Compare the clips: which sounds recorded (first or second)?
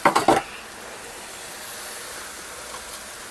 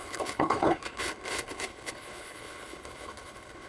first